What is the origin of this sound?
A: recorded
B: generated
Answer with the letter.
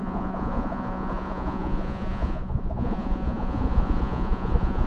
B